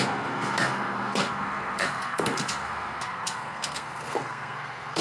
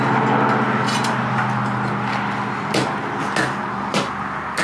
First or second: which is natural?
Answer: second